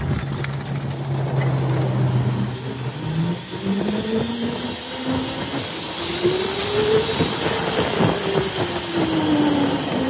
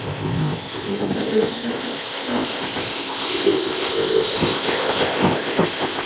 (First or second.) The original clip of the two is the first